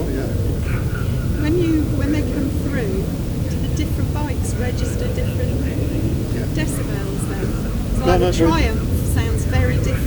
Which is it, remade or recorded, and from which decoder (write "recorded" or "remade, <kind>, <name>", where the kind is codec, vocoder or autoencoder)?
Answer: recorded